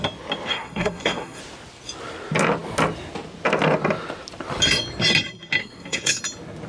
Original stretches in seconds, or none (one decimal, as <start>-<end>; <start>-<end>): 0.0-0.5; 1.4-5.6; 6.2-6.7